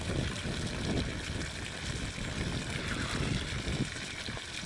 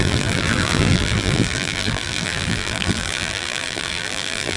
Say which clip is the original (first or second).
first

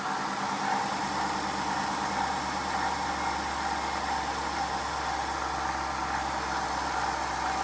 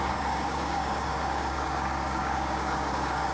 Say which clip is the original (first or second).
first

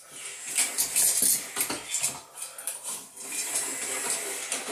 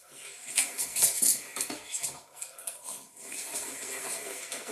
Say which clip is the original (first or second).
first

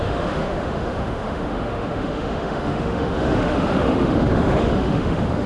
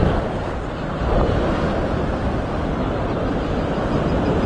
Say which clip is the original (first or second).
second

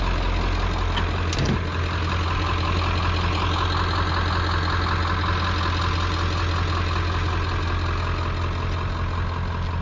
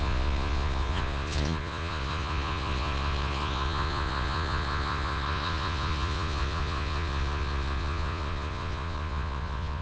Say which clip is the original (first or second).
first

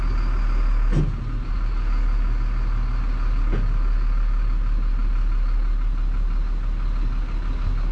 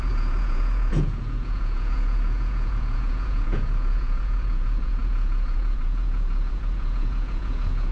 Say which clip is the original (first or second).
first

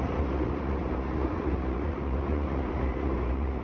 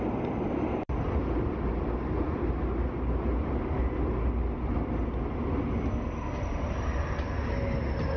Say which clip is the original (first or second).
second